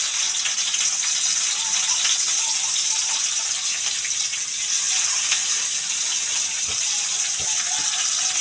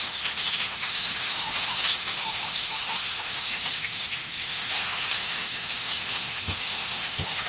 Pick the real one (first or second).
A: first